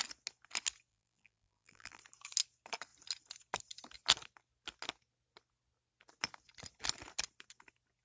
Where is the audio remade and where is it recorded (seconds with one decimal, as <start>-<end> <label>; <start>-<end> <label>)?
0.0-0.9 recorded; 0.9-2.0 remade; 2.0-8.0 recorded